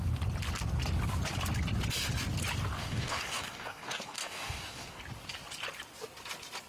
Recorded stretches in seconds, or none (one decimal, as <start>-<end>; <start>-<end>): 0.0-2.8; 5.0-6.7